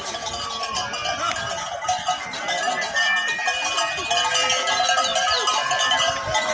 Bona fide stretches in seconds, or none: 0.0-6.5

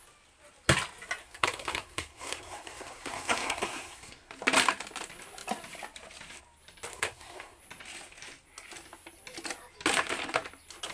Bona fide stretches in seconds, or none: 0.0-1.2; 4.3-6.9; 7.6-10.9

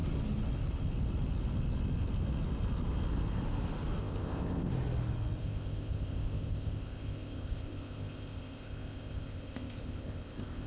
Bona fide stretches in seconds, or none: 0.0-4.0; 4.7-5.4

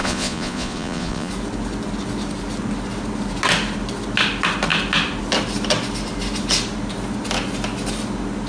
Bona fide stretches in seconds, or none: 1.3-8.5

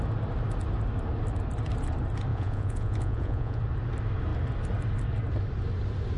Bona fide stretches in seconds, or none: 0.0-2.3; 3.6-6.2

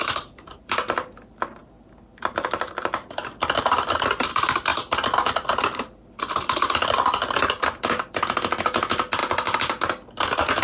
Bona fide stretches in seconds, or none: 0.0-10.6

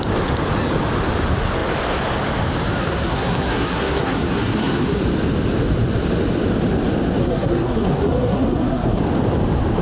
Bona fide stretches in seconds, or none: 0.0-2.8; 5.0-7.2; 9.0-9.8